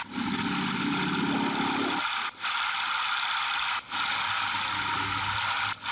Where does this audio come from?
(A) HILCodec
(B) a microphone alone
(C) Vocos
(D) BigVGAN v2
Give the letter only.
B